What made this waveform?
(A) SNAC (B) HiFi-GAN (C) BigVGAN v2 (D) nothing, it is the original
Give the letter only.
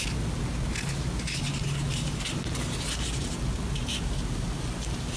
D